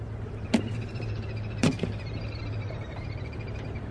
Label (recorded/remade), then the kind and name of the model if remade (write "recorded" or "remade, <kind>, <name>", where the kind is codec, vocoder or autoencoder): remade, vocoder, BigVGAN v2